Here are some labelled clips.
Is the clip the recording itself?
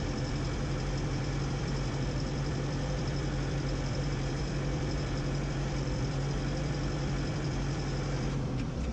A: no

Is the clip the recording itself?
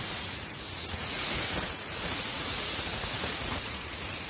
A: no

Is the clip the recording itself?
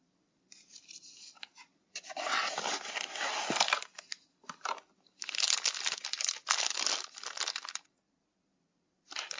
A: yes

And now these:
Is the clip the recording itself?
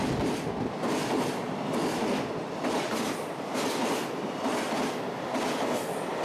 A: yes